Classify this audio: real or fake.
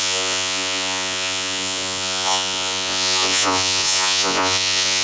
fake